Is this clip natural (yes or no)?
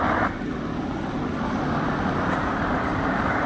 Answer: yes